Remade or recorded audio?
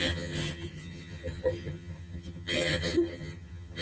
remade